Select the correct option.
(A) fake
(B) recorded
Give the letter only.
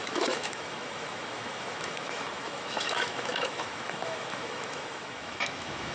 A